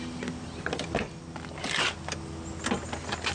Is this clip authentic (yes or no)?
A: yes